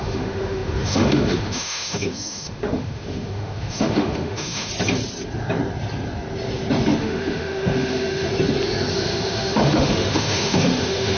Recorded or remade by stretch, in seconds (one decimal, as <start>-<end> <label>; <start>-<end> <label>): 0.0-4.7 remade; 4.7-7.0 recorded; 7.0-8.3 remade; 8.3-8.9 recorded; 8.9-11.2 remade